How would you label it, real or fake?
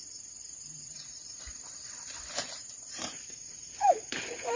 fake